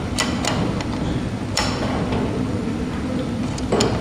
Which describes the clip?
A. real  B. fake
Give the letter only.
A